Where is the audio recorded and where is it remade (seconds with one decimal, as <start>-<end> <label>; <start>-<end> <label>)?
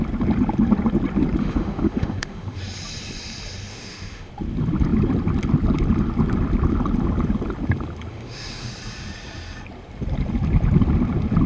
0.0-1.4 recorded; 1.4-2.6 remade; 2.6-3.7 recorded; 3.7-4.3 remade; 4.3-8.1 recorded; 8.1-8.7 remade; 8.7-11.5 recorded